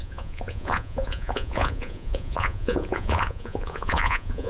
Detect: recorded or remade remade